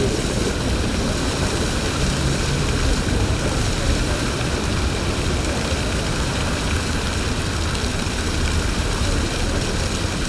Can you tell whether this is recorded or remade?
remade